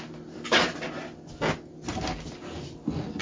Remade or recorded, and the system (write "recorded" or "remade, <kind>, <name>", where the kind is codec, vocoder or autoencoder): recorded